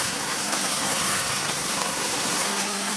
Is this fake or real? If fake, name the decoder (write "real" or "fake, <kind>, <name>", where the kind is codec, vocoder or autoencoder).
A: fake, codec, SNAC